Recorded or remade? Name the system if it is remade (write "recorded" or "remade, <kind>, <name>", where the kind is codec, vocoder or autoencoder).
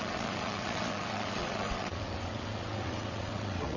remade, vocoder, WaveNeXt